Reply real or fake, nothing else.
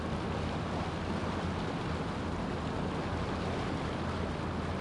real